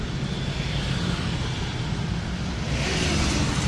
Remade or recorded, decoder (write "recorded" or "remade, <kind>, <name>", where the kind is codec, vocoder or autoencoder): recorded